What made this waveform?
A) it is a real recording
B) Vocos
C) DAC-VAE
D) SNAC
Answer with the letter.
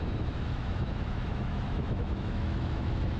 C